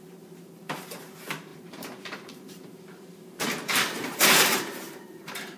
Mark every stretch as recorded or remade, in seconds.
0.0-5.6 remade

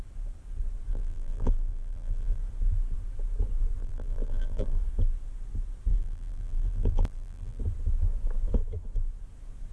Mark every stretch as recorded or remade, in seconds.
0.0-0.9 recorded; 0.9-2.4 remade; 2.4-3.8 recorded; 3.8-4.8 remade; 4.8-5.9 recorded; 5.9-7.6 remade; 7.6-9.7 recorded